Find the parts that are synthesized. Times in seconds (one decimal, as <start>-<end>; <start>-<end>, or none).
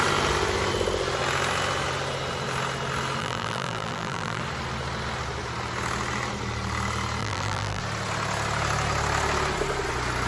3.2-4.4; 7.2-7.8